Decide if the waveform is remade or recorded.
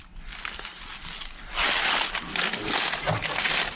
recorded